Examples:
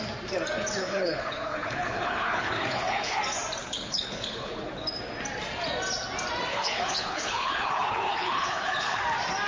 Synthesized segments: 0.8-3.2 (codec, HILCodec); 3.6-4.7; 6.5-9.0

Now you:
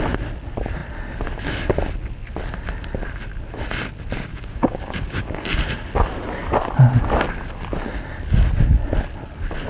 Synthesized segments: 4.3-5.4 (codec, DAC)

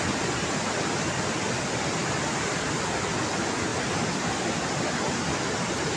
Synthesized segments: 2.0-3.3 (vocoder, BigVGAN v2); 3.7-6.0

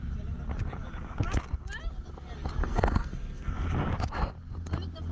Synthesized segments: 2.6-3.5 (codec, SNAC)

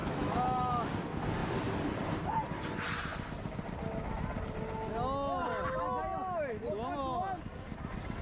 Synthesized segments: 0.0-0.9 (autoencoder, DAC-VAE)

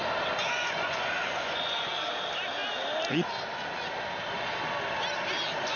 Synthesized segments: 0.4-1.9 (vocoder, Vocos)